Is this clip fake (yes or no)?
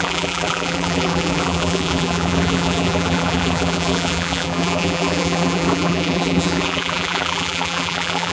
yes